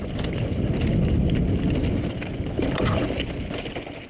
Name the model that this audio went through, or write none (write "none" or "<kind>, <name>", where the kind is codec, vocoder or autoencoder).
none